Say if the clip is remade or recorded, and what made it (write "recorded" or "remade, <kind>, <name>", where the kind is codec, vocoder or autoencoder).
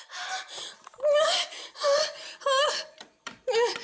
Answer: remade, vocoder, BigVGAN v2